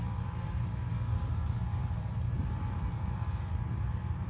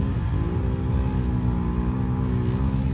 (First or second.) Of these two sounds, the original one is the second